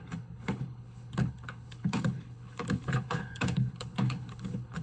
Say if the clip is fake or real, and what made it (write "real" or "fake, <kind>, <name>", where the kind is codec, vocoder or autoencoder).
fake, codec, HILCodec